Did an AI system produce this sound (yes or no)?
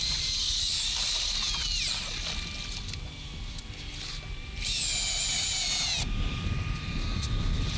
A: no